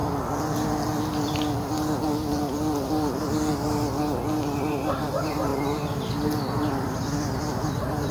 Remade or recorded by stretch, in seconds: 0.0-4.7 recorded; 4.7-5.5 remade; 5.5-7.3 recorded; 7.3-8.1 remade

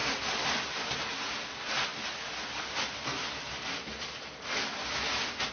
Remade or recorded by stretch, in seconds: 0.0-5.5 recorded